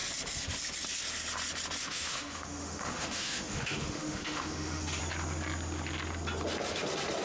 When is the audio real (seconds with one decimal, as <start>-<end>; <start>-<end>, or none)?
0.0-1.8; 5.0-7.2

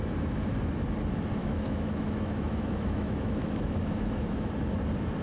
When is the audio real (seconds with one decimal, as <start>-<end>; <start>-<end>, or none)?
0.0-1.4; 4.5-5.2

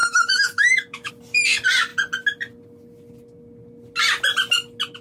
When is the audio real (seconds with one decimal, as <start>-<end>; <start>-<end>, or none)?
1.1-5.0

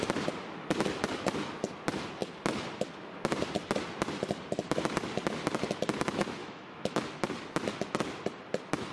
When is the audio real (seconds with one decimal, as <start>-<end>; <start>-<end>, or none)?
0.0-6.4; 7.0-8.9

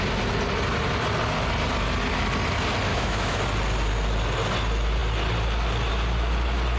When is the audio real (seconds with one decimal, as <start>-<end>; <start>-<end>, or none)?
0.0-2.9; 3.4-6.8